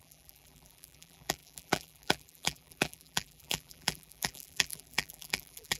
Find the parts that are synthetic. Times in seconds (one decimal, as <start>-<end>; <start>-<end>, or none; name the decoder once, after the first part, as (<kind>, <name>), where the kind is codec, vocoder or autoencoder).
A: 0.0-5.8 (vocoder, BigVGAN v2)